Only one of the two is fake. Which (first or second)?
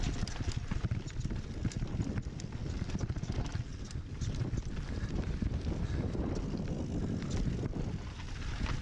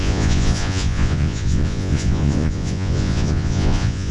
second